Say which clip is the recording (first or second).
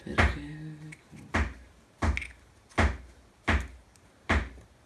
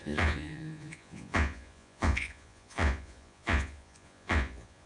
first